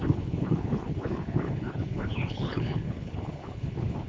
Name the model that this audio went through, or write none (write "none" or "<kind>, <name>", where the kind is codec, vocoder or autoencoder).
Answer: codec, HILCodec